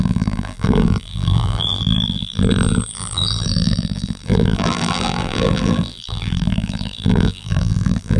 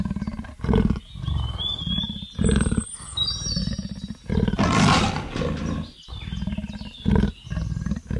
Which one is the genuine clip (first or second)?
second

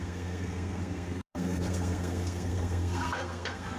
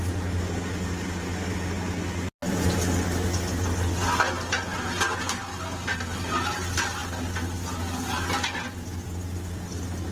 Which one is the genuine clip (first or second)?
second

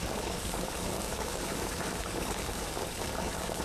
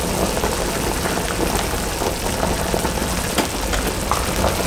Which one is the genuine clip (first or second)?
second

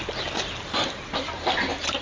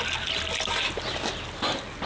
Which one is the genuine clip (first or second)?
second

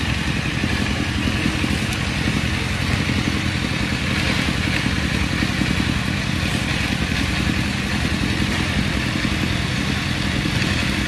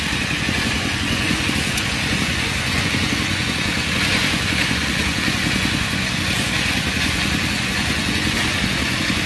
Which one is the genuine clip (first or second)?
first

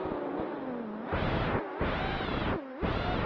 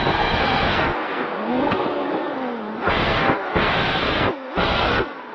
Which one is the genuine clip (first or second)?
first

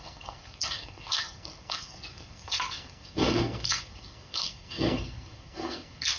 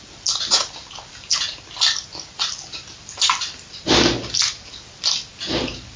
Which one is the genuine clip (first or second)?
second